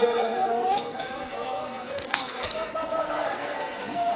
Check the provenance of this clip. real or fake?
fake